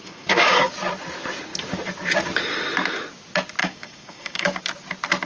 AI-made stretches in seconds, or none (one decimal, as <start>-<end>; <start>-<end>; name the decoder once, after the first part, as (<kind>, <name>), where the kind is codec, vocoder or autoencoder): 0.0-0.7 (codec, DAC); 3.6-4.6